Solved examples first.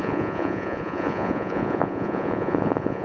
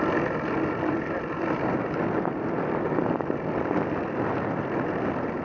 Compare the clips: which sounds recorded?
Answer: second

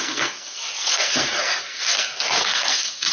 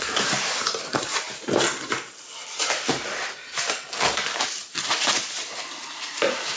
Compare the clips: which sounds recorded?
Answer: second